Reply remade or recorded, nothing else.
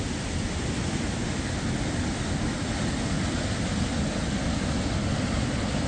recorded